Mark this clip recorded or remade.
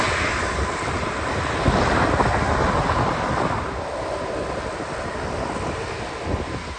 recorded